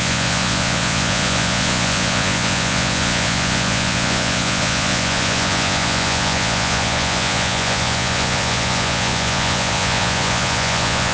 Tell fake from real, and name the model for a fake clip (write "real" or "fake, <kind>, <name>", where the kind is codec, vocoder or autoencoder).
fake, vocoder, Vocos